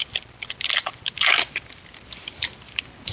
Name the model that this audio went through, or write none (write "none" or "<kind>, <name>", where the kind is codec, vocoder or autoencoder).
none